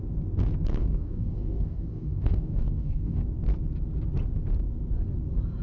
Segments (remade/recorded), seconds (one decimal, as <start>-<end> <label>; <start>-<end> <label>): 0.0-0.7 recorded; 0.7-3.2 remade; 3.2-5.6 recorded